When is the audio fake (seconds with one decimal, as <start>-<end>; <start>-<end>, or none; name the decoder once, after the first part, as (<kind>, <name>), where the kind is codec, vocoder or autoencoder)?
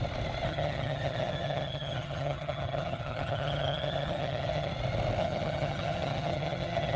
0.5-4.7 (vocoder, HiFi-GAN); 5.2-7.0